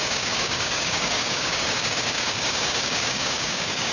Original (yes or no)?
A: no